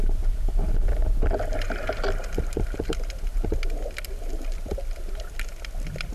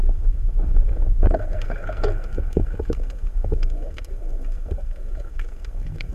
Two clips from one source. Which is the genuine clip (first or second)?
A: first